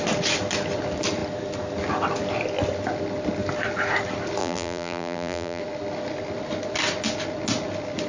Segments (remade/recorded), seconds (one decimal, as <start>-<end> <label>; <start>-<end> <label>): 0.0-4.4 recorded; 4.4-5.6 remade; 5.6-8.1 recorded